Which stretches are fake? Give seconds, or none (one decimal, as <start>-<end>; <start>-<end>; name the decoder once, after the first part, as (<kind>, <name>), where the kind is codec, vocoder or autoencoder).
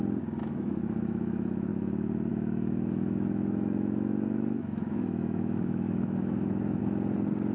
0.4-1.7 (autoencoder, DAC-VAE); 2.3-6.8